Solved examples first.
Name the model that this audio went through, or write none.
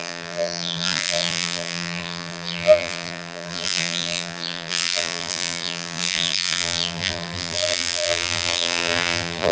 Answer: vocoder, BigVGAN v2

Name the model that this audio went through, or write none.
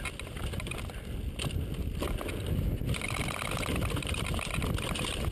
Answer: none